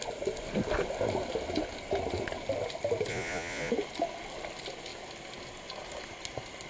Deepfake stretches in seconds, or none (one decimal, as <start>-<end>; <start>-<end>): 3.1-3.7